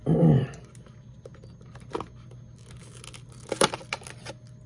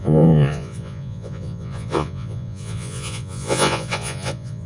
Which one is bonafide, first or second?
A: first